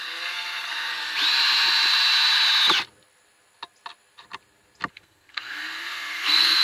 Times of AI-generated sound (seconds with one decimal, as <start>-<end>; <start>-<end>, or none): 0.0-0.9; 4.9-6.6